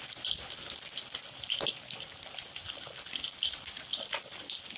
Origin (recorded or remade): recorded